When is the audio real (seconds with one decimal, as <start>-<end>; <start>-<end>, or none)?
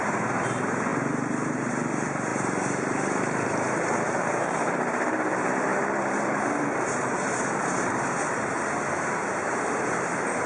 none